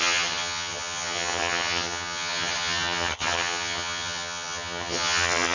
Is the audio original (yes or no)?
no